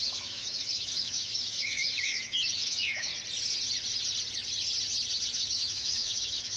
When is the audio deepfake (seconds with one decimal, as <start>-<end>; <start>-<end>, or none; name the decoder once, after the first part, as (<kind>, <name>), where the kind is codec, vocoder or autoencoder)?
0.0-3.1 (autoencoder, DAC-VAE); 5.3-6.6